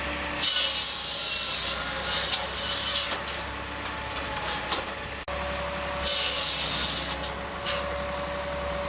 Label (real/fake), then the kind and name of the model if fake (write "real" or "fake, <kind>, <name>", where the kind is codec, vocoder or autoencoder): real